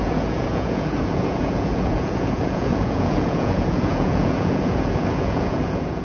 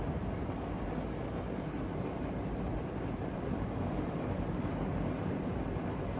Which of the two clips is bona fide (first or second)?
second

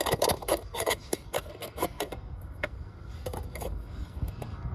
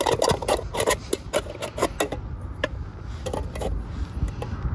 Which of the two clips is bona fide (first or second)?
second